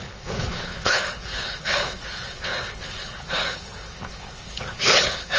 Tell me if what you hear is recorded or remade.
remade